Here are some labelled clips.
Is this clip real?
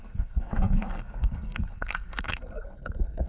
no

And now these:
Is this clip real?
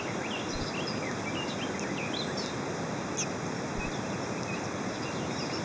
no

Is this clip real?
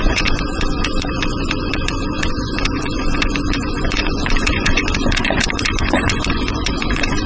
no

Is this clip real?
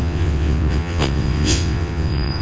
no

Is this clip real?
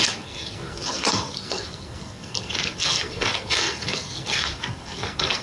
no